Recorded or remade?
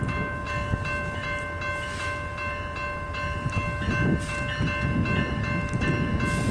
recorded